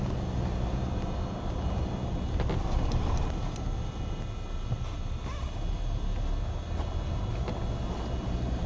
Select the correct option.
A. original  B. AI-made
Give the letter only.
A